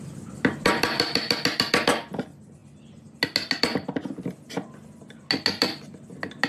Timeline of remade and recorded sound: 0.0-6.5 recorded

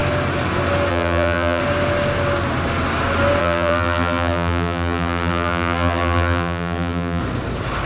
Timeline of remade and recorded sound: 0.0-0.9 recorded; 0.9-1.6 remade; 1.6-3.4 recorded; 3.4-7.2 remade; 7.2-7.9 recorded

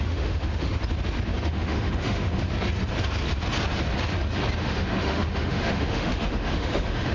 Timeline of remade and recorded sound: 0.0-0.8 remade; 0.8-1.4 recorded; 1.4-2.4 remade; 2.4-4.6 recorded; 4.6-7.1 remade

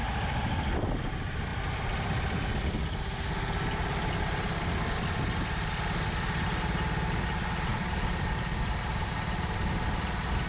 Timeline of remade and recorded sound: 0.0-10.5 recorded

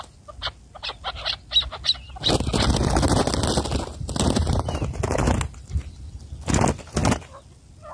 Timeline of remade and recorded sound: 0.0-7.9 recorded

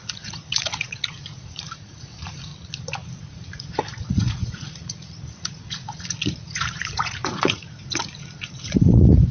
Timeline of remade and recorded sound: 0.0-2.5 remade; 2.5-3.2 recorded; 3.2-9.3 remade

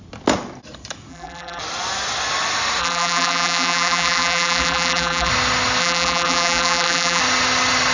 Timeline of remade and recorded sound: 0.0-1.1 recorded; 1.1-1.6 remade; 1.6-2.8 recorded; 2.8-5.3 remade; 5.3-5.8 recorded; 5.8-7.2 remade; 7.2-7.9 recorded

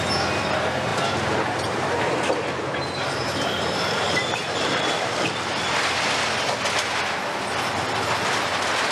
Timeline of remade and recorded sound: 0.0-0.9 recorded; 0.9-5.7 remade; 5.7-8.9 recorded